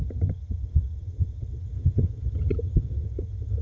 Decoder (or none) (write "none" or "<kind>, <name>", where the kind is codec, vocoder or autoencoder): vocoder, HiFi-GAN